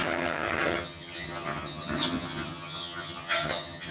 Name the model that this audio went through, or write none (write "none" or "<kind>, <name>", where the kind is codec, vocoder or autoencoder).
vocoder, HiFi-GAN